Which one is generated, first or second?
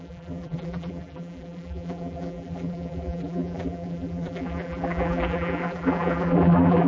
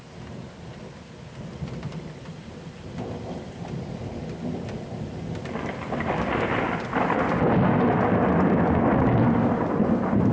first